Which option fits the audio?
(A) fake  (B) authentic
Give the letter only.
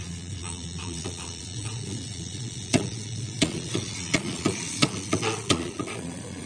A